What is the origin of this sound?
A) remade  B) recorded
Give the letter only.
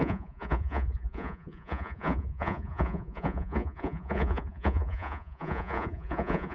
A